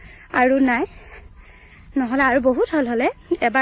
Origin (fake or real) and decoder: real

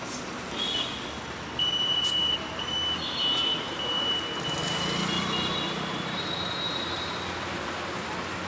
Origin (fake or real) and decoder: real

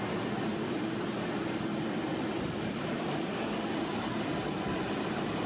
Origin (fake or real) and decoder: real